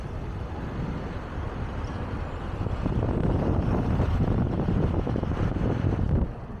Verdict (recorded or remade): remade